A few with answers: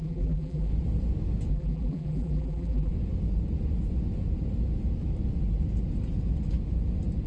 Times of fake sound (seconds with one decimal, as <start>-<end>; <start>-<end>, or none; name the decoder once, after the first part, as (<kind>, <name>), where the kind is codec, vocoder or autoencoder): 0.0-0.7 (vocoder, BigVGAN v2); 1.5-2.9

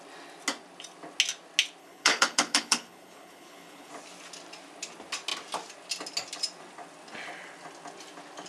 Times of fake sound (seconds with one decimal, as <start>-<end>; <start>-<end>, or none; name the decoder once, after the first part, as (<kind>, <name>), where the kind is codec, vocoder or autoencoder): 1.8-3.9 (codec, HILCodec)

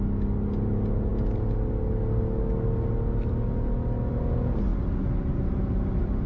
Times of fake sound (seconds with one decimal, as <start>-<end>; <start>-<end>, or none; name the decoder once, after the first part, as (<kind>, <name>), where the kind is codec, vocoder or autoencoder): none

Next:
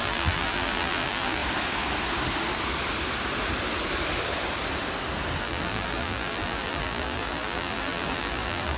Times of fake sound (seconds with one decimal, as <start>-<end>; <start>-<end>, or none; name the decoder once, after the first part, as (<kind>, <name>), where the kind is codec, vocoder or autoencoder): 0.0-1.4 (vocoder, BigVGAN v2); 5.4-8.8

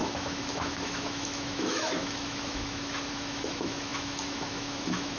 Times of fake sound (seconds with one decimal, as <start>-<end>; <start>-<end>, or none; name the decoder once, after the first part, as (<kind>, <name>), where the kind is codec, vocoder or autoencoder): 0.0-5.2 (autoencoder, DAC-VAE)